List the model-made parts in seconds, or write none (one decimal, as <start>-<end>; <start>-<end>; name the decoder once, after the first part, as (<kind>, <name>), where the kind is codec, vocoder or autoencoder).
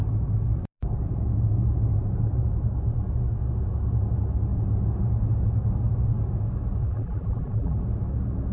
6.8-7.8 (vocoder, BigVGAN v2)